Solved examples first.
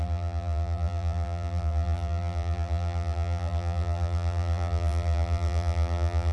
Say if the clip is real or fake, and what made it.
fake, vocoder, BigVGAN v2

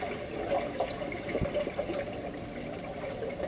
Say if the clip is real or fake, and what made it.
real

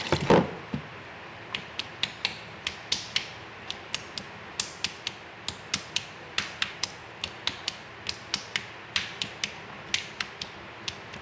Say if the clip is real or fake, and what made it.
real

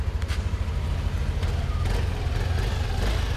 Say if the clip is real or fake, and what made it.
real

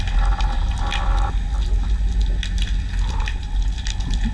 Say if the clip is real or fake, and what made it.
real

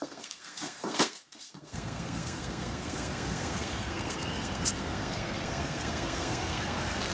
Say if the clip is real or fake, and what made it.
fake, codec, SNAC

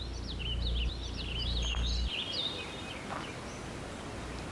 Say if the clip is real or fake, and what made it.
real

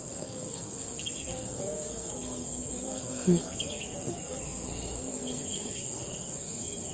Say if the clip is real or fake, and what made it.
fake, codec, SNAC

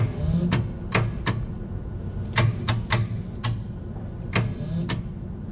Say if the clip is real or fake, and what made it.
real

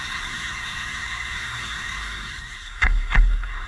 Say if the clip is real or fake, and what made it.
fake, codec, SNAC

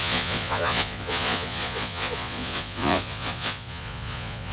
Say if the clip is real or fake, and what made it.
fake, vocoder, Vocos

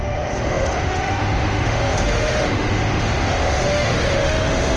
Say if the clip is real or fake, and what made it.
fake, autoencoder, DAC-VAE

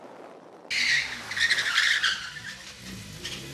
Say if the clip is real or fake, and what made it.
real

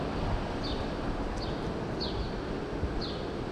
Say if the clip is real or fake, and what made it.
real